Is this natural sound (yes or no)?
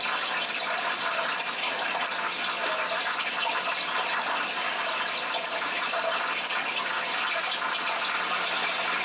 yes